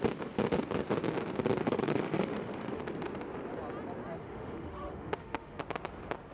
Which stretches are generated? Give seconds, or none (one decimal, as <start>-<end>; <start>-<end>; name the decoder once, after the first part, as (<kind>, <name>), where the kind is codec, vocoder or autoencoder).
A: 1.6-2.8 (autoencoder, DAC-VAE); 4.2-5.6